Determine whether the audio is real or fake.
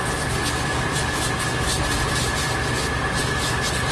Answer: fake